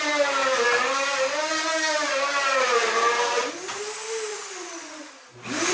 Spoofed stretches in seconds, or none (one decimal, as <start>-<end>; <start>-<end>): 4.3-5.1